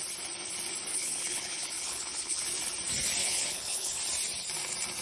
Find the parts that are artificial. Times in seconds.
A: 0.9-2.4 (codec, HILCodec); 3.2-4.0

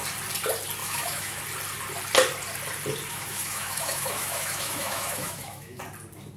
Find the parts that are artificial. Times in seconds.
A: 0.8-1.4 (autoencoder, DAC-VAE); 3.1-5.8

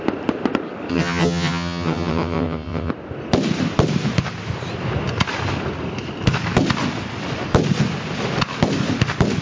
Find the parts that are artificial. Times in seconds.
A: 0.9-2.9 (vocoder, HiFi-GAN)

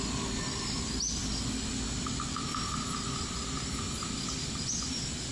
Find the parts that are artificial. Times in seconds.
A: none

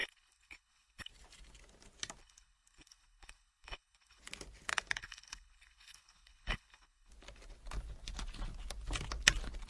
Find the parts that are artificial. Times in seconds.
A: 0.0-1.1 (codec, HILCodec); 2.2-4.2; 5.0-7.1